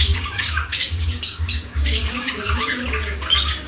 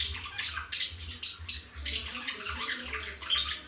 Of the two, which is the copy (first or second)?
first